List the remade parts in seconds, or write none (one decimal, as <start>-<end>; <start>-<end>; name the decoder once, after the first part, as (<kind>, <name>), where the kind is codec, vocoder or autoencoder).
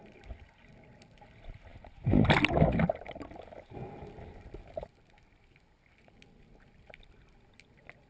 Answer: none